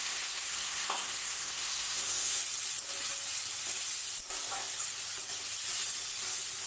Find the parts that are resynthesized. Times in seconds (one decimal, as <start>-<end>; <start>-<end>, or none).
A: 0.0-2.4